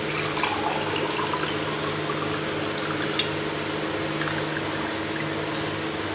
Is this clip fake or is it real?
real